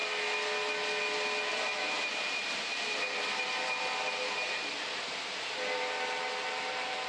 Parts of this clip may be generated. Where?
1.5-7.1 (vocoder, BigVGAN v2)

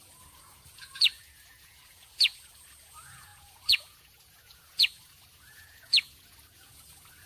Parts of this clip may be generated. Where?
0.0-7.3 (vocoder, Vocos)

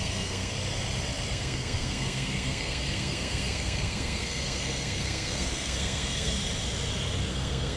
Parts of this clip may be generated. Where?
0.0-0.5 (codec, SNAC); 1.3-6.4; 7.3-7.8

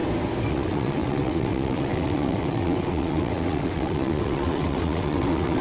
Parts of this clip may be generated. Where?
0.5-5.6 (vocoder, WaveNeXt)

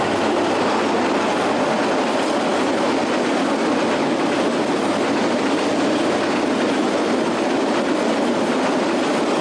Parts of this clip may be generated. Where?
none